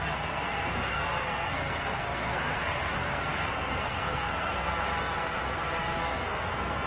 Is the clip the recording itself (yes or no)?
no